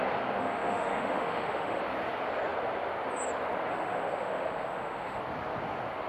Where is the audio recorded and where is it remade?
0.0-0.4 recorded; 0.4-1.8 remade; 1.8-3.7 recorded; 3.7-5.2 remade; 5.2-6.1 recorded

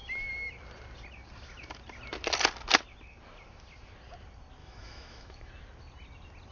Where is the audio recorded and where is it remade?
0.0-4.6 recorded; 4.6-5.5 remade; 5.5-6.5 recorded

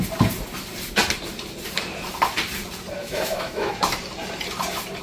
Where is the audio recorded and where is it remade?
0.0-3.0 recorded; 3.0-3.8 remade; 3.8-5.0 recorded